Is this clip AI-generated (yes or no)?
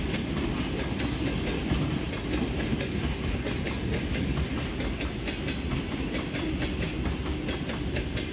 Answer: no